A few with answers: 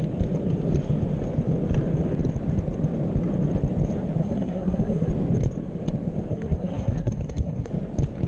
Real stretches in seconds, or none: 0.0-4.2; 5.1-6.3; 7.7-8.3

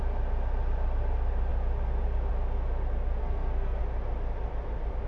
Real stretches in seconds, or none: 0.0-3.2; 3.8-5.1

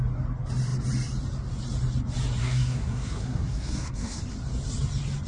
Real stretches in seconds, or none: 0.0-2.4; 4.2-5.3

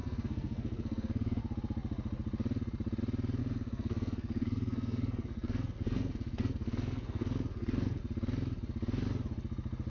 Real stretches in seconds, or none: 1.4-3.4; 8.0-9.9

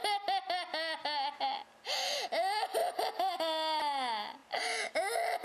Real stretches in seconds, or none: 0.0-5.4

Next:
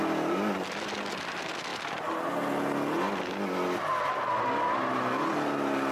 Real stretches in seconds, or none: 0.0-5.9

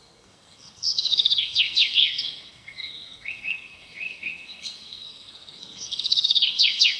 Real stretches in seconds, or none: none

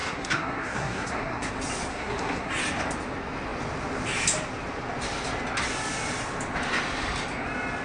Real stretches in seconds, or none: 1.5-1.9; 2.5-7.8